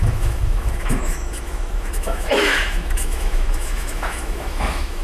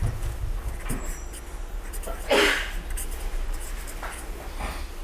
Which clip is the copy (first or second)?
first